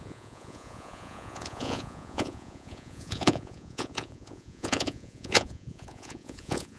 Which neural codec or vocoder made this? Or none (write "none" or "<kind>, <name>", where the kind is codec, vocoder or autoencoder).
vocoder, Vocos